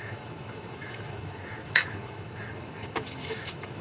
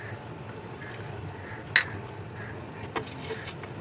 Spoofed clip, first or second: first